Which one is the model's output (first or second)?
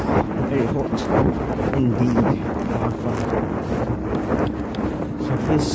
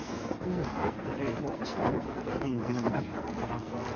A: second